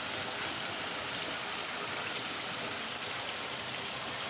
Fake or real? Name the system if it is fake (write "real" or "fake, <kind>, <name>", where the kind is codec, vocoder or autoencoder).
real